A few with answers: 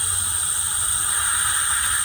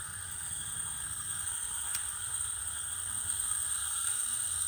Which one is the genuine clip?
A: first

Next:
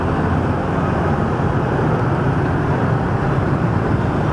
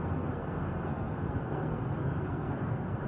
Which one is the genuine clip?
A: first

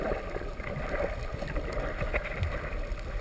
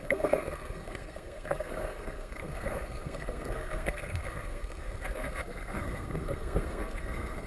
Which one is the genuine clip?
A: first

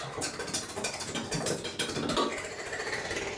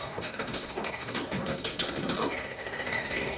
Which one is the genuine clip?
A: first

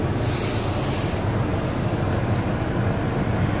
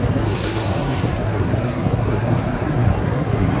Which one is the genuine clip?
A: first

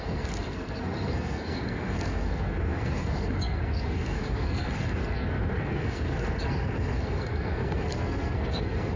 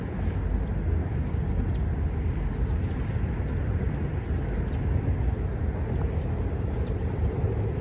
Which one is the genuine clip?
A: second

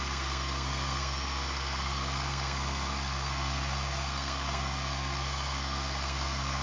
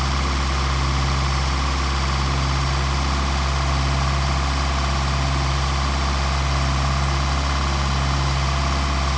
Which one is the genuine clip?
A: second